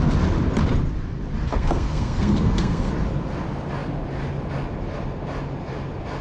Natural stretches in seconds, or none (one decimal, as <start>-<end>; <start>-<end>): 0.0-1.5; 2.9-6.2